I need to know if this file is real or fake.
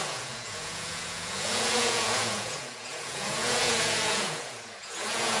fake